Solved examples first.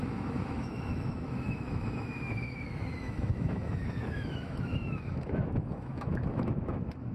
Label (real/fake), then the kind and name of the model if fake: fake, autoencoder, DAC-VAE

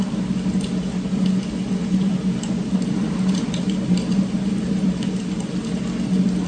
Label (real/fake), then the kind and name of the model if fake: real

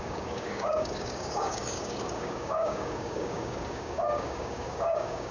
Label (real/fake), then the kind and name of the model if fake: fake, codec, DAC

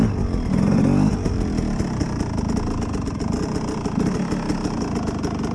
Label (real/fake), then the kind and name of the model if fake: real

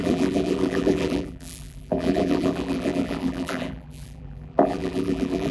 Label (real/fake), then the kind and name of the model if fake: fake, vocoder, BigVGAN v2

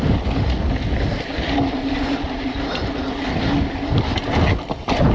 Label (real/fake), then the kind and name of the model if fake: real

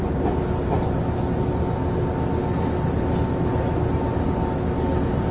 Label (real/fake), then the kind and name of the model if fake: real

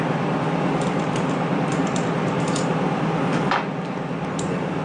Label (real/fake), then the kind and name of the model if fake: fake, vocoder, BigVGAN v2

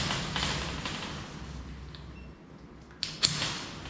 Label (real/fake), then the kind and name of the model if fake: real